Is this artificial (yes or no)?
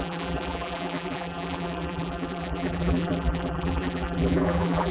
yes